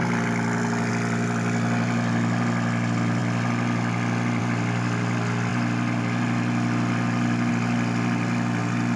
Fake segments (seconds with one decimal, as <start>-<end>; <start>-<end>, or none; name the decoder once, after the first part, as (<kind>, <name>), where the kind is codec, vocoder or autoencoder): none